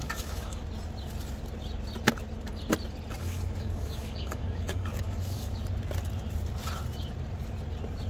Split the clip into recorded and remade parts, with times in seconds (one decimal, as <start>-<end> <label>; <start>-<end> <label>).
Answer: 0.0-0.6 remade; 0.6-3.2 recorded; 3.2-5.6 remade; 5.6-8.1 recorded